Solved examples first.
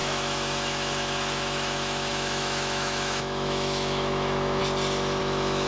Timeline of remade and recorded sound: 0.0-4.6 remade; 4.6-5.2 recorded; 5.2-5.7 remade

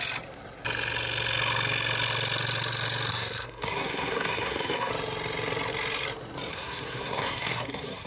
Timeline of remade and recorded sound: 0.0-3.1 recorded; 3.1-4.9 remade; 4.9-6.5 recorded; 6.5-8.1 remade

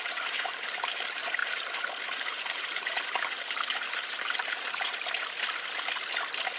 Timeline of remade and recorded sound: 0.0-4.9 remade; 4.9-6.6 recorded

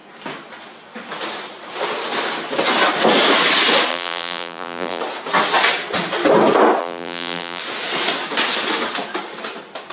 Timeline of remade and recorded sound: 0.0-3.9 recorded; 3.9-5.0 remade; 5.0-6.8 recorded; 6.8-7.6 remade; 7.6-9.9 recorded

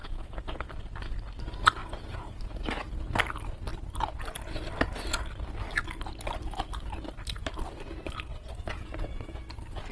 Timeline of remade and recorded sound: 0.0-0.7 remade; 0.7-1.8 recorded; 1.8-2.4 remade; 2.4-8.3 recorded; 8.3-9.4 remade; 9.4-9.9 recorded

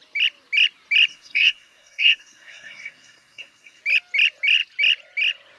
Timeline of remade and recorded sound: 0.0-1.1 recorded; 1.1-3.8 remade; 3.8-5.6 recorded

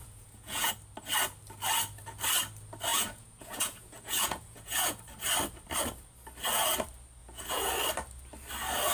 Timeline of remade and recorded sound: 0.0-0.7 remade; 0.7-2.9 recorded; 2.9-5.0 remade; 5.0-7.2 recorded; 7.2-7.7 remade; 7.7-8.9 recorded